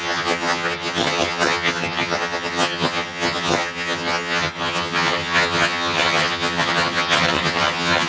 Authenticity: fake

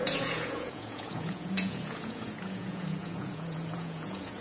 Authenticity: fake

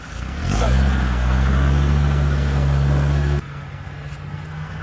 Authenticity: fake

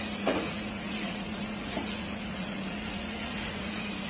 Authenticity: fake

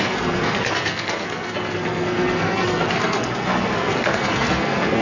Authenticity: fake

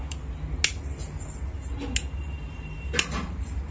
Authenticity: real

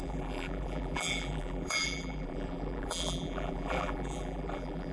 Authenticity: fake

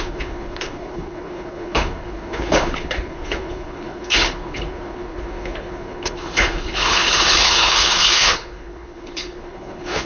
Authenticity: fake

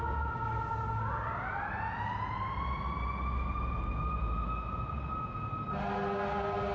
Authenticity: real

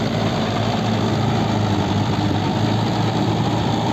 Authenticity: fake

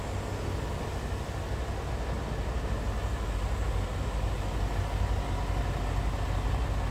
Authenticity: real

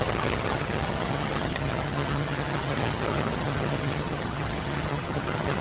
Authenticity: fake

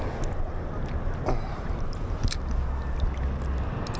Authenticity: real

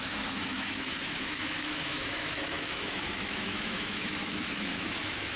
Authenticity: fake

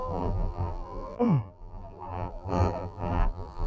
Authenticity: fake